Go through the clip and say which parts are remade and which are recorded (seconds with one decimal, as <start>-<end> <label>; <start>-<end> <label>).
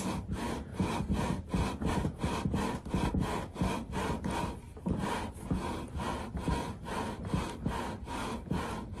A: 0.0-0.7 recorded; 0.7-3.0 remade; 3.0-4.7 recorded; 4.7-7.2 remade; 7.2-9.0 recorded